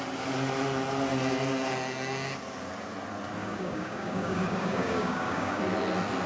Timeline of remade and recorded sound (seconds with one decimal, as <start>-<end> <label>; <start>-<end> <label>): 0.0-3.4 recorded; 3.4-5.6 remade; 5.6-6.3 recorded